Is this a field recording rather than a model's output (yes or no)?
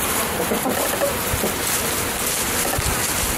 yes